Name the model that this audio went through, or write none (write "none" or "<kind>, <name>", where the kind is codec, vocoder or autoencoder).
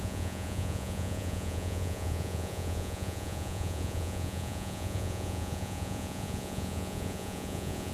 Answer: vocoder, Vocos